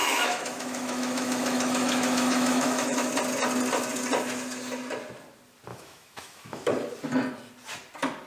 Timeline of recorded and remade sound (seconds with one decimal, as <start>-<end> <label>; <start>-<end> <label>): 0.0-3.1 remade; 3.1-5.7 recorded; 5.7-6.7 remade; 6.7-8.3 recorded